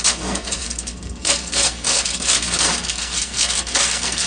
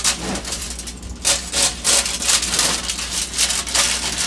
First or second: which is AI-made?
first